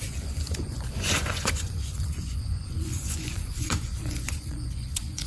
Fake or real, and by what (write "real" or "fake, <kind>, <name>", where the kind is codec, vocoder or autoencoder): fake, vocoder, Vocos